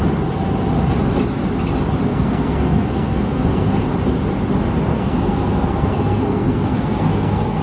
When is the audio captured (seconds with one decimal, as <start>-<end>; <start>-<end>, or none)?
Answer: 0.0-2.1; 3.8-4.9